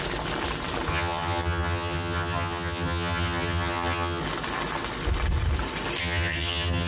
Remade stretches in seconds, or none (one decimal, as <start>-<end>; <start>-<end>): 0.9-4.2; 6.0-6.9